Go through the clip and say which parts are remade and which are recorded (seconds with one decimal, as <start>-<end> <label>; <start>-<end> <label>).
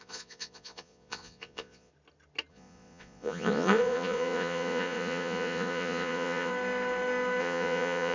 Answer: 0.0-1.9 remade; 1.9-2.5 recorded; 2.5-6.5 remade; 6.5-7.4 recorded; 7.4-8.1 remade